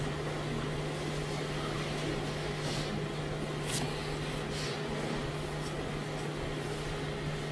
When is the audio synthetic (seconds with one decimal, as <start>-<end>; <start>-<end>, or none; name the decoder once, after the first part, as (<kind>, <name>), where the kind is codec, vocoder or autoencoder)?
none